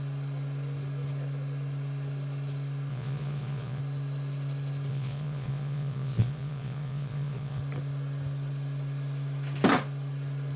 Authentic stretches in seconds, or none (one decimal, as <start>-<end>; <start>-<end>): 0.0-2.9; 3.8-4.9; 7.6-10.6

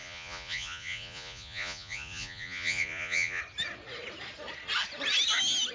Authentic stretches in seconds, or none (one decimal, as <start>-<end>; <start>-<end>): 3.4-5.7

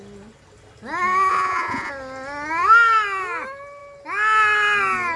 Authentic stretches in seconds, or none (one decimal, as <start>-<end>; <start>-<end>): 0.0-1.3; 1.9-5.2